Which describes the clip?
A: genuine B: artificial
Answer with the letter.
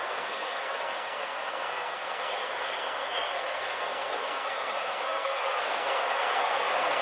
B